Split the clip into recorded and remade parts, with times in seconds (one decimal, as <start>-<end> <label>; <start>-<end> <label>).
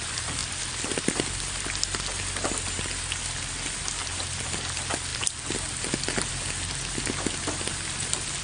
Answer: 0.0-8.4 recorded